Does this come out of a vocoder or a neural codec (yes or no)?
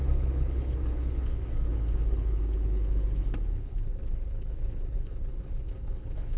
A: yes